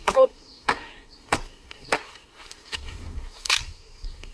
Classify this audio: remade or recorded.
remade